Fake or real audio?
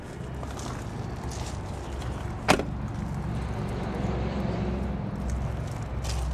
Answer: real